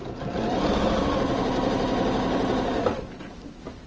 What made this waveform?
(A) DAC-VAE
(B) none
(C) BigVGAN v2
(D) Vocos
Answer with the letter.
B